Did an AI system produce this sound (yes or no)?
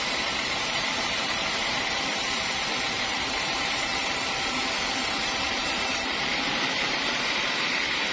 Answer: yes